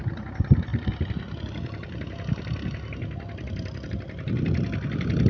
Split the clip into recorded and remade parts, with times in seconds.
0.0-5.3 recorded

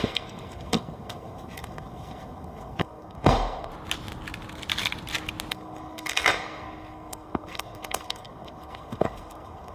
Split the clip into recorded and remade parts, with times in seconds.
0.0-3.7 remade; 3.7-5.5 recorded; 5.5-9.7 remade

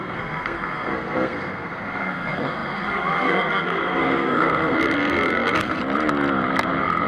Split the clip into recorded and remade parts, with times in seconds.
0.0-5.8 remade; 5.8-7.1 recorded

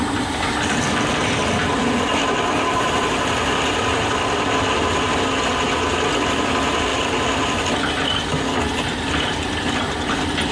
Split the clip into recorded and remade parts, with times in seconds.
0.0-10.5 recorded

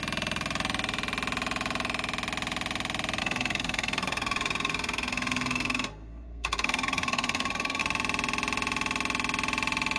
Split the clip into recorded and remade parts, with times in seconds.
0.0-3.2 recorded; 3.2-7.8 remade; 7.8-10.0 recorded

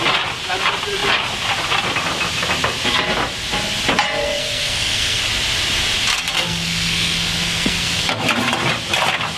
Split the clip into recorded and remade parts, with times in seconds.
0.0-4.2 recorded; 4.2-5.2 remade; 5.2-6.1 recorded; 6.1-8.2 remade; 8.2-9.4 recorded